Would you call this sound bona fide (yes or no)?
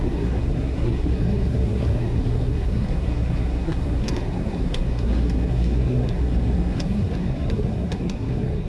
no